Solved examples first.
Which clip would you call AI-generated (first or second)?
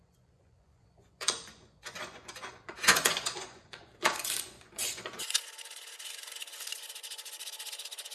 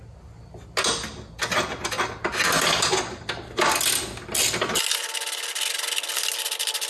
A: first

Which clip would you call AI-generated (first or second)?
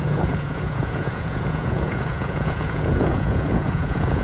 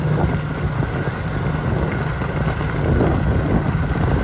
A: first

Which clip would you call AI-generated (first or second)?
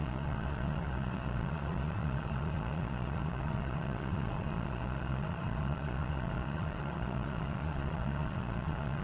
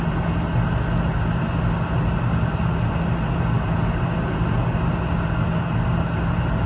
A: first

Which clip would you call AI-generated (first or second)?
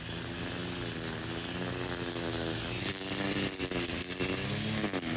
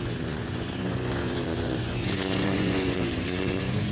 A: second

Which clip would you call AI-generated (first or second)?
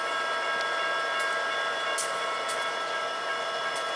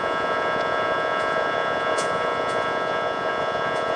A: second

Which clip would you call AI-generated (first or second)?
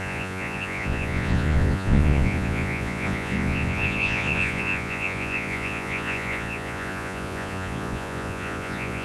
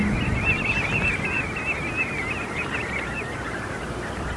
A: first